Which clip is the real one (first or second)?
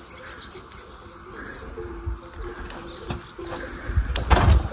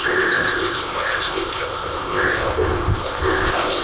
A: first